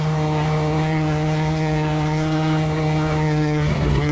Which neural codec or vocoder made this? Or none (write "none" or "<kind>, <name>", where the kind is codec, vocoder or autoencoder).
codec, SNAC